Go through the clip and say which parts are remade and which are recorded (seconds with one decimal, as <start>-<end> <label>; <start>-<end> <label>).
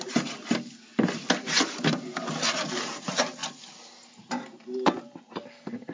0.0-5.9 recorded